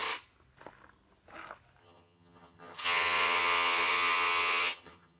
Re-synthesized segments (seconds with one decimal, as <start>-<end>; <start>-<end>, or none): 1.8-5.2